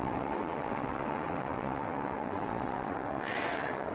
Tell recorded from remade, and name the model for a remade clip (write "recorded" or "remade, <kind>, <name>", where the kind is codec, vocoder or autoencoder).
remade, vocoder, WaveNeXt